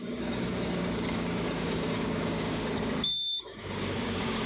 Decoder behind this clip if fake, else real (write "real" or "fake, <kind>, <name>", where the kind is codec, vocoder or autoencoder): fake, codec, DAC